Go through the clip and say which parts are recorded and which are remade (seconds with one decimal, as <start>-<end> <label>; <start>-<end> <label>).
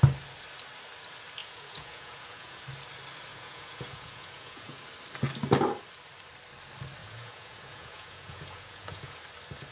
0.0-1.4 recorded; 1.4-2.6 remade; 2.6-3.3 recorded; 3.3-4.8 remade; 4.8-7.0 recorded; 7.0-9.2 remade; 9.2-9.7 recorded